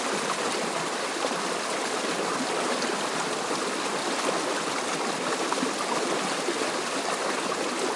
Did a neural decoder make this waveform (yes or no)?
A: no